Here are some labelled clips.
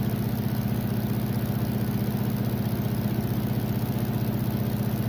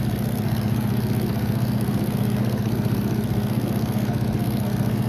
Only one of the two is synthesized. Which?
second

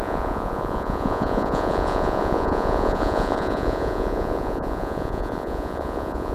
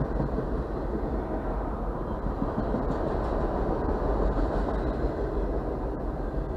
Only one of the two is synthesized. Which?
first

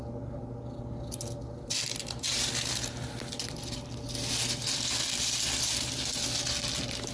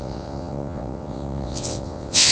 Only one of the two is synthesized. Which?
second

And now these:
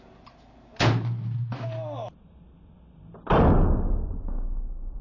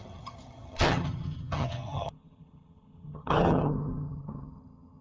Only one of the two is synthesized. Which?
second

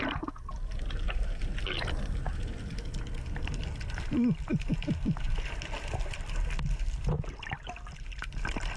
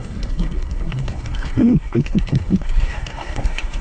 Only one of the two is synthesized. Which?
second